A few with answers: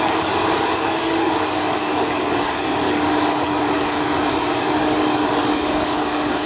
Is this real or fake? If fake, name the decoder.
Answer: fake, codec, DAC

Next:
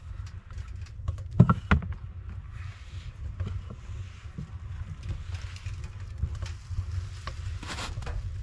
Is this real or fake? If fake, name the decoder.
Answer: real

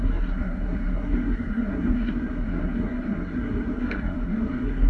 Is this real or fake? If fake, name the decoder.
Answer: fake, codec, SNAC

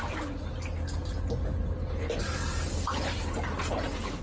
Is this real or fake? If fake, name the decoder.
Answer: real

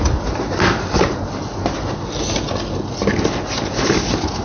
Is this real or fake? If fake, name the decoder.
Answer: real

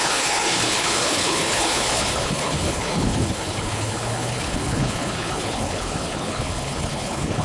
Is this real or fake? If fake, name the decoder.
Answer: fake, codec, HILCodec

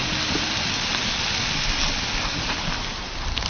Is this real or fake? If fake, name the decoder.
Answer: real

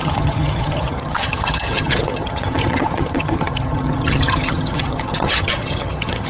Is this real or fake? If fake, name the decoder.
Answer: fake, vocoder, HiFi-GAN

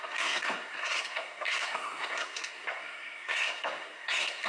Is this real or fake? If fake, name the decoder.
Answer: fake, codec, SNAC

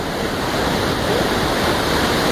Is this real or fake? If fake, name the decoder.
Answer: fake, vocoder, BigVGAN v2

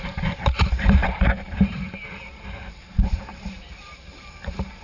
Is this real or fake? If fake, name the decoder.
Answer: fake, vocoder, BigVGAN v2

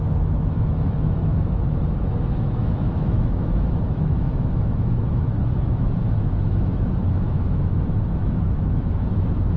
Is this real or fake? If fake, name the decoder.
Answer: fake, autoencoder, DAC-VAE